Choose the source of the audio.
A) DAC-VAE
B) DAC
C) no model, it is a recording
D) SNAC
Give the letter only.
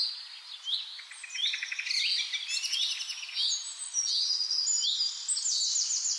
C